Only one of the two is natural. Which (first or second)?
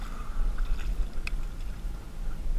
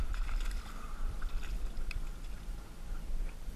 first